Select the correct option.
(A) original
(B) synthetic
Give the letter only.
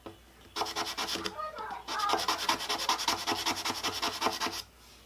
A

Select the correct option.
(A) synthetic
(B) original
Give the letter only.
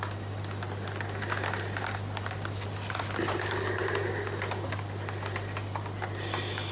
B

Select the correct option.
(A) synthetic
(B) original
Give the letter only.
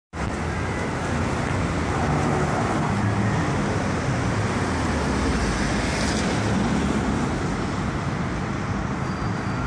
B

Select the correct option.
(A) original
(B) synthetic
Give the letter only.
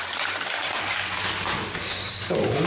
A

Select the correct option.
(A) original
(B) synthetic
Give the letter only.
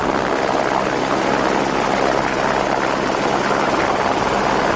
A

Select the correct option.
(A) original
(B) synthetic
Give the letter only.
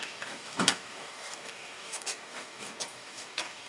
B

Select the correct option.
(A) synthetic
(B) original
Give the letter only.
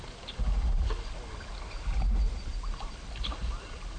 B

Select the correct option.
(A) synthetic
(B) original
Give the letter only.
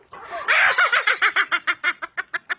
B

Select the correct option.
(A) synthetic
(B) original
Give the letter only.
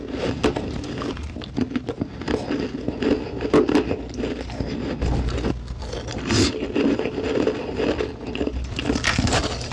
B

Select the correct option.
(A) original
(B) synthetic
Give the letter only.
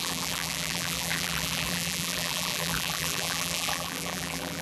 B